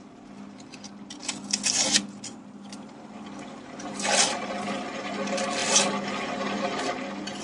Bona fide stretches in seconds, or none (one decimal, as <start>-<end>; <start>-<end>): 0.0-7.4